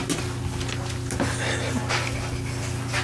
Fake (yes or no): no